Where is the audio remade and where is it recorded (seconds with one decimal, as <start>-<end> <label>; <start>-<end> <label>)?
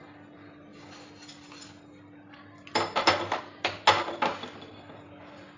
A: 0.0-5.6 recorded